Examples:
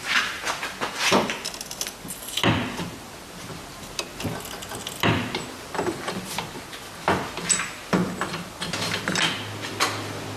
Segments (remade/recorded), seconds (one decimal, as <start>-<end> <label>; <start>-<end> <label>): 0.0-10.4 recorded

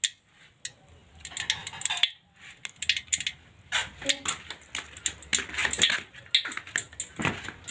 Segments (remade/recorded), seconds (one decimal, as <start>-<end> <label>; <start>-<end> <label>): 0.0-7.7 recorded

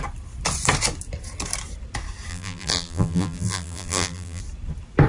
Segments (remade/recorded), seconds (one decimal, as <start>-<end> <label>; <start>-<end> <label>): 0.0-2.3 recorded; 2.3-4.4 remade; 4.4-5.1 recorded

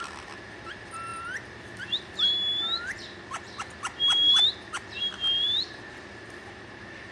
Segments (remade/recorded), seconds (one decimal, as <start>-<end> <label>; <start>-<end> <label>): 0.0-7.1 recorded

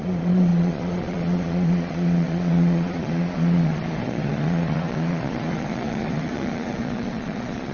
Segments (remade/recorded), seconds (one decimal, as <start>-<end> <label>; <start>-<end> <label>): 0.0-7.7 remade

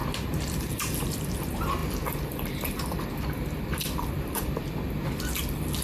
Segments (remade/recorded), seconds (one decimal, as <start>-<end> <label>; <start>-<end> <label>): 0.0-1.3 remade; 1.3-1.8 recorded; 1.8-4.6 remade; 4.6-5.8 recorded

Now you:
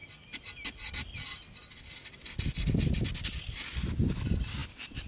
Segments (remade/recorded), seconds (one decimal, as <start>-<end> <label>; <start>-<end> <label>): 0.0-5.1 recorded

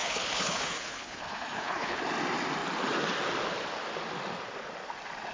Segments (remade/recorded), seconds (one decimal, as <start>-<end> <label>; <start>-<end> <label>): 0.0-2.0 remade; 2.0-5.3 recorded